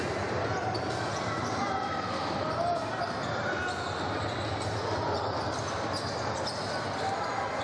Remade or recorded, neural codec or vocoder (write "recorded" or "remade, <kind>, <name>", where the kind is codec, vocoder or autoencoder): recorded